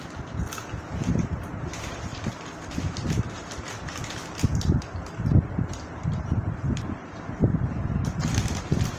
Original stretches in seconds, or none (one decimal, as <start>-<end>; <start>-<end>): 0.0-9.0